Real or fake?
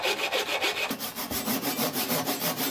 fake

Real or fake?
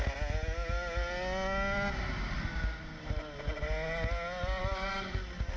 real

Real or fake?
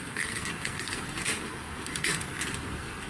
fake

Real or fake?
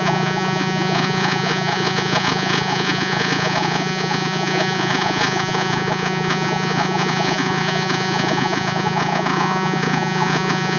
fake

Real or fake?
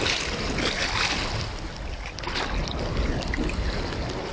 real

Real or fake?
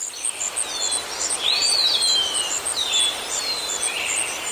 real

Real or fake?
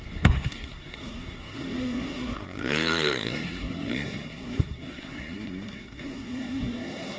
fake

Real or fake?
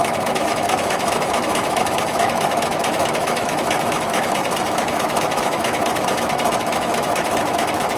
fake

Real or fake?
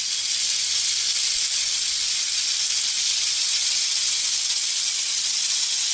real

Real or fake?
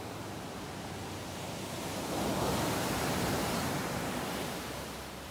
fake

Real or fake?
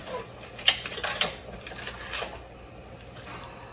real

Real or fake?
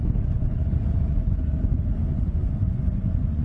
fake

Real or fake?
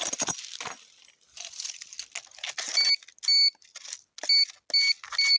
real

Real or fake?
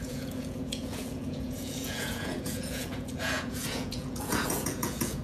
fake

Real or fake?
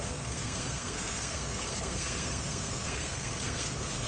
fake